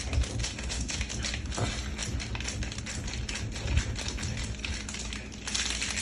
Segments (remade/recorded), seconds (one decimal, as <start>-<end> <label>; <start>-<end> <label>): 0.0-0.4 recorded; 0.4-1.1 remade; 1.1-6.0 recorded